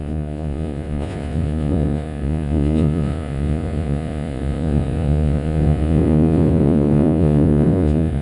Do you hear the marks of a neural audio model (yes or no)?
yes